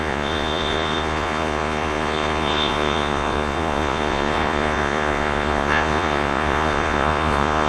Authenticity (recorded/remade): remade